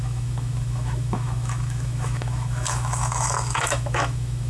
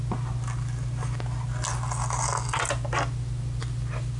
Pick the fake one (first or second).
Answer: first